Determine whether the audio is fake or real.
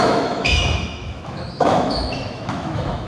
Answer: fake